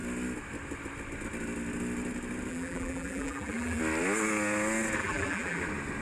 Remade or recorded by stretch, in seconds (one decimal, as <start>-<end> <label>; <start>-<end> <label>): 0.0-2.5 recorded; 2.5-3.8 remade; 3.8-5.0 recorded; 5.0-5.6 remade; 5.6-6.0 recorded